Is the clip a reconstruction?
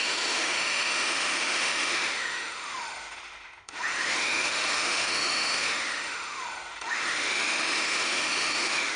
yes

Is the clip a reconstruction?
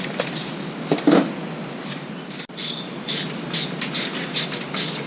no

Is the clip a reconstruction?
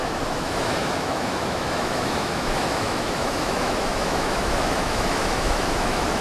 yes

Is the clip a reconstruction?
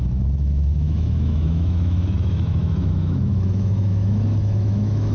yes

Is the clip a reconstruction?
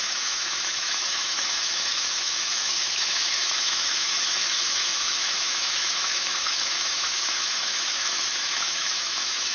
yes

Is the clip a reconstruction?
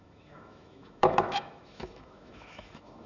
yes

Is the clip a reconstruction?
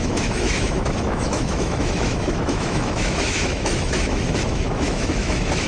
yes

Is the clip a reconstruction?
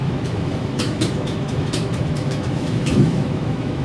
yes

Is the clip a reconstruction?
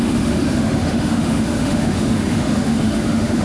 yes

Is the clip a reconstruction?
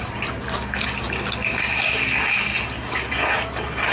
no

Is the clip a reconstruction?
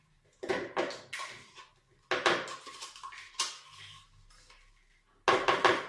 no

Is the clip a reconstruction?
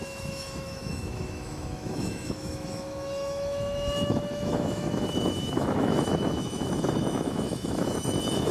yes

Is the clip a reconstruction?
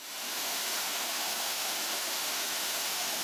yes